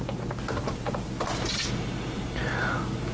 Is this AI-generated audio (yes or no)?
no